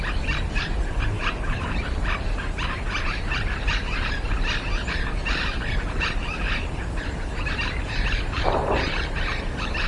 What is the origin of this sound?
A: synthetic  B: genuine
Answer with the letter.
A